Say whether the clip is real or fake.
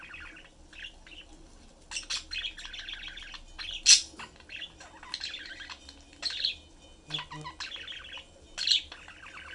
real